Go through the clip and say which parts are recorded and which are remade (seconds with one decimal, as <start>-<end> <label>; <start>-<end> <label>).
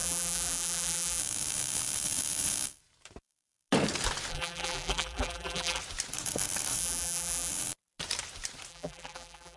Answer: 0.0-1.2 remade; 1.2-4.3 recorded; 4.3-5.8 remade; 5.8-6.8 recorded; 6.8-7.5 remade; 7.5-8.7 recorded; 8.7-9.6 remade